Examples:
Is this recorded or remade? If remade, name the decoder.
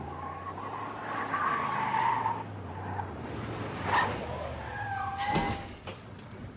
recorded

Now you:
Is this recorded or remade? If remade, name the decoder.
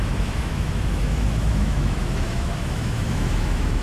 remade, autoencoder, DAC-VAE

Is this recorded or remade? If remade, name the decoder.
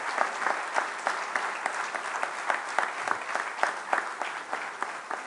recorded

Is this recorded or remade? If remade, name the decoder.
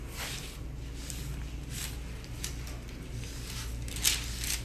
recorded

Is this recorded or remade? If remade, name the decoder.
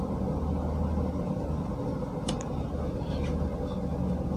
recorded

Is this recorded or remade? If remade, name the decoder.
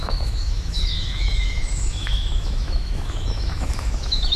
remade, autoencoder, DAC-VAE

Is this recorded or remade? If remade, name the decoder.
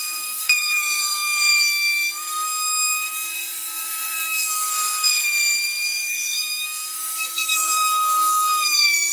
remade, codec, SNAC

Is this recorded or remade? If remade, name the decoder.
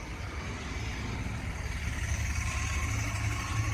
recorded